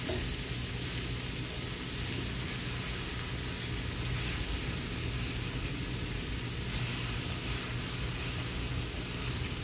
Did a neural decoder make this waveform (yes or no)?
no